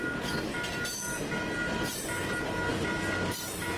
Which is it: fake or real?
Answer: real